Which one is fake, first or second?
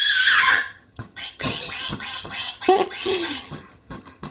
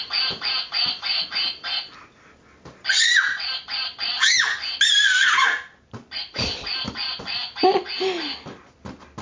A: first